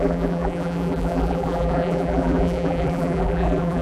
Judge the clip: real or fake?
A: fake